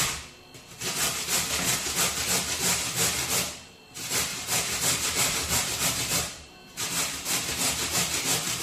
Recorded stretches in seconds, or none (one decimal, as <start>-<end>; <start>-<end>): 0.0-4.3; 7.5-8.6